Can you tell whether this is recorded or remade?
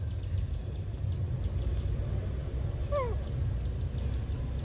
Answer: recorded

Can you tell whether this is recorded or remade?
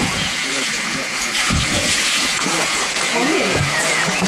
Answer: remade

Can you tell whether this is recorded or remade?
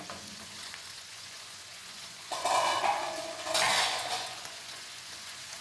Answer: remade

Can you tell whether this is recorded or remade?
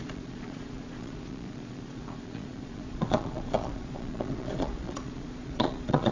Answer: remade